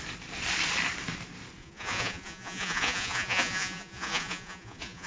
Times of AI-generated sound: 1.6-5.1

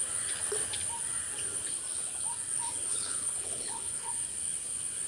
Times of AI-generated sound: 2.9-4.1

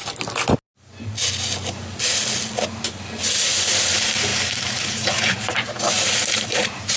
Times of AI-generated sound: 3.7-7.0